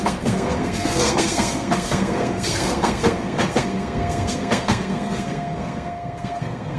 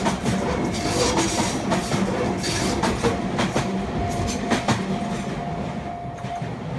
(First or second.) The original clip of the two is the second